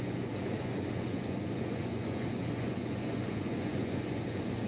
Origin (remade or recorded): remade